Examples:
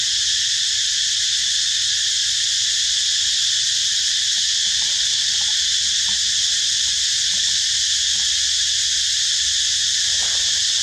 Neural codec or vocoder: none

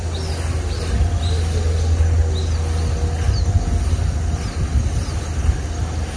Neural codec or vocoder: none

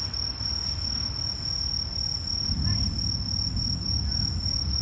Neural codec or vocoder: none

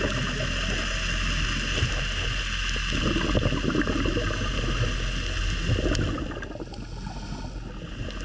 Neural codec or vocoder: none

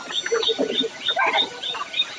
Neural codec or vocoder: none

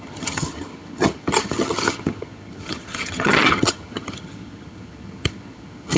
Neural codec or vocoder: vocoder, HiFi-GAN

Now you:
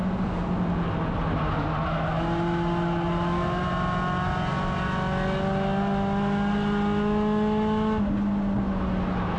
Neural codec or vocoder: none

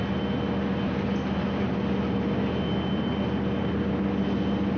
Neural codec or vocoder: none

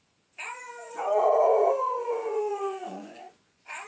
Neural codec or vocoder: vocoder, Vocos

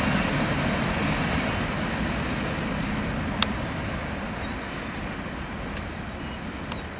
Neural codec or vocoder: none